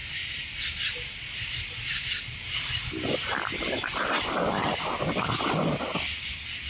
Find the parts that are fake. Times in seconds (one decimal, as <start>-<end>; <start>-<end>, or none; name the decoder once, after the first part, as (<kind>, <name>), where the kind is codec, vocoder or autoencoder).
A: none